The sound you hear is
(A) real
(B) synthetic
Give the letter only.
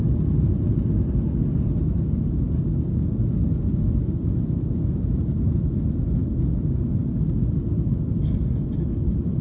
A